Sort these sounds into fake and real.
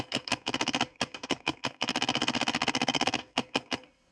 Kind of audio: fake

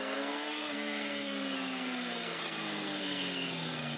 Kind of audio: fake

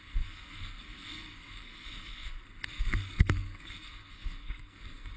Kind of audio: fake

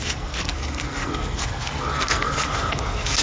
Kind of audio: fake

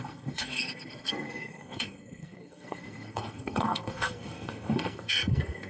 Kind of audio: fake